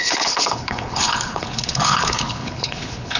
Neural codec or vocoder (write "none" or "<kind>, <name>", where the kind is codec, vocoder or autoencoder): codec, HILCodec